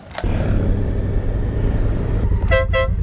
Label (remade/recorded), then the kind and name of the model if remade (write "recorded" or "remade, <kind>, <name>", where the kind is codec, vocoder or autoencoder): recorded